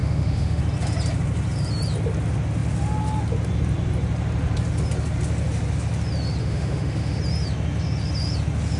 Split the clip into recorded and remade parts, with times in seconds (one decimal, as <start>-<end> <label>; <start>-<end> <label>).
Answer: 0.0-0.6 remade; 0.6-6.4 recorded; 6.4-7.2 remade; 7.2-8.8 recorded